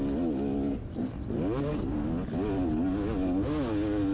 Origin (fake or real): real